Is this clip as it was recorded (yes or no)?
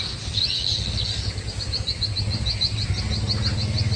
yes